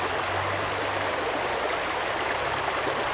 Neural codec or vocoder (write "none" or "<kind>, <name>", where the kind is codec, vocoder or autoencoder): none